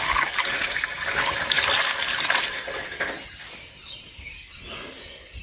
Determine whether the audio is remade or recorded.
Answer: recorded